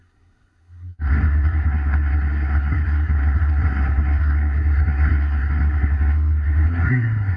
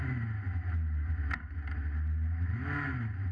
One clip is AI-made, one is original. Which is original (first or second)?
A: second